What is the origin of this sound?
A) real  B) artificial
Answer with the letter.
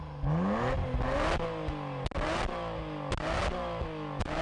A